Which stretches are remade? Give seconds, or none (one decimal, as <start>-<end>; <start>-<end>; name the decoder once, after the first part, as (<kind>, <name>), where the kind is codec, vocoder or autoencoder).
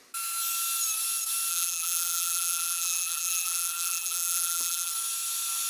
1.5-4.9 (vocoder, BigVGAN v2)